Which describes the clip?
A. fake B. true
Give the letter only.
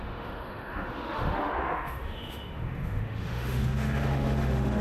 A